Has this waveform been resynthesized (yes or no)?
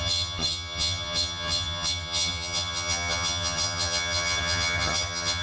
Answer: yes